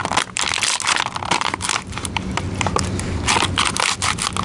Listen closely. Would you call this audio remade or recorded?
recorded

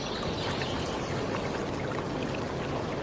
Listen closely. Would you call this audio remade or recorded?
recorded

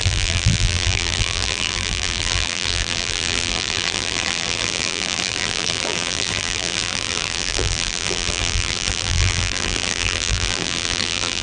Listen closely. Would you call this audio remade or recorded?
remade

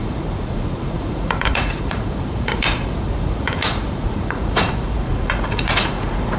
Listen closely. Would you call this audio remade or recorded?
remade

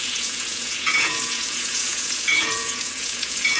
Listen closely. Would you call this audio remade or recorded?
remade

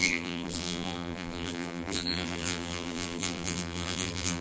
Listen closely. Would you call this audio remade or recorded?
remade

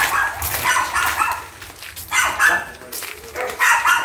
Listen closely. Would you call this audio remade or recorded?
recorded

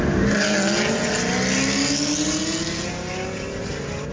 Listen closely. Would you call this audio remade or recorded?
recorded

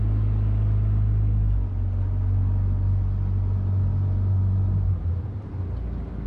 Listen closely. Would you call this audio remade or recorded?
recorded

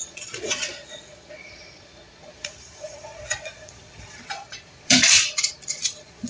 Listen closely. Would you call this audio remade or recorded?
remade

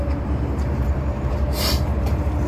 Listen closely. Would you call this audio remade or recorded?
remade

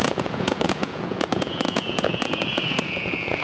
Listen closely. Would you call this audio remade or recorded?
remade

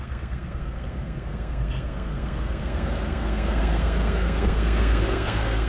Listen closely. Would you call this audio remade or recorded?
remade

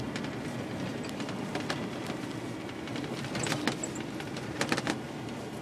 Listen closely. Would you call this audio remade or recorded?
recorded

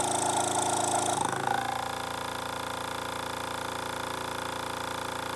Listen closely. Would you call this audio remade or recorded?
recorded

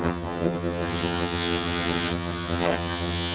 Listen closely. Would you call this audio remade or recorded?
remade